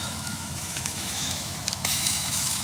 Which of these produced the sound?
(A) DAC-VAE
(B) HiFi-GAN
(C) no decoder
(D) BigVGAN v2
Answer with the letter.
A